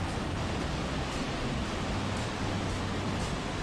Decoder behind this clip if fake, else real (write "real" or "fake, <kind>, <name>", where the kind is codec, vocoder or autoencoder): real